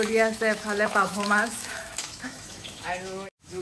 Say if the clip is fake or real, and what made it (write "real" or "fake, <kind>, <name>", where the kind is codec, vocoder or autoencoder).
fake, autoencoder, DAC-VAE